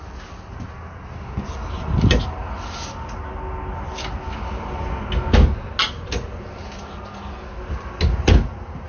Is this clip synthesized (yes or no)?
no